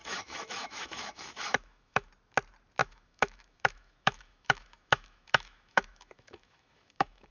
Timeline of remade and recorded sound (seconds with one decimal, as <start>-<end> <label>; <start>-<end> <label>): 0.0-2.1 remade; 2.1-2.8 recorded; 2.8-7.3 remade